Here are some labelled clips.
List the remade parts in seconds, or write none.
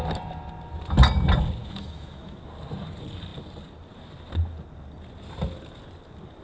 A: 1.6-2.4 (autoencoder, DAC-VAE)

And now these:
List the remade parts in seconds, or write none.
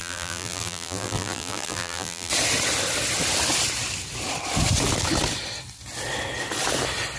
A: 0.0-2.3 (vocoder, BigVGAN v2)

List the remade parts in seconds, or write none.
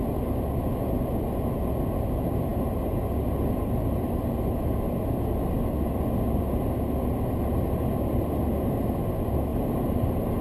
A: 9.5-10.4 (vocoder, BigVGAN v2)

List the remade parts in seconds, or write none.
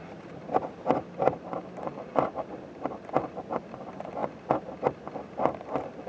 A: none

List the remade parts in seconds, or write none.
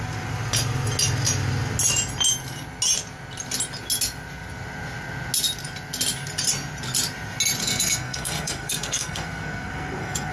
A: 7.6-10.3 (codec, SNAC)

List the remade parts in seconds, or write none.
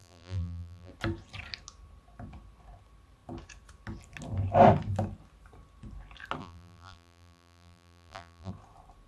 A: 0.0-0.9 (vocoder, BigVGAN v2); 6.4-8.5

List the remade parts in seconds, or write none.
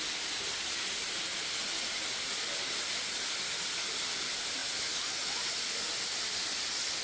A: none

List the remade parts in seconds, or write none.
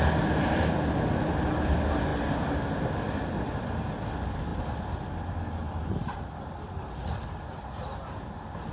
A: none